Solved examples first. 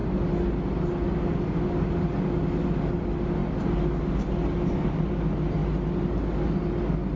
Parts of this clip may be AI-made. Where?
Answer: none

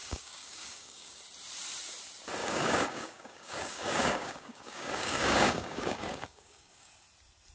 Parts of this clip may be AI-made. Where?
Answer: 0.0-1.2 (codec, DAC); 2.4-6.9

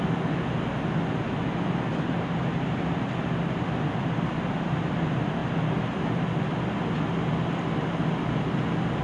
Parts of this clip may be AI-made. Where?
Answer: none

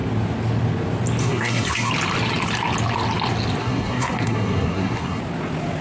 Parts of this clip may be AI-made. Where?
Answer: 1.2-1.9 (codec, SNAC); 3.6-5.2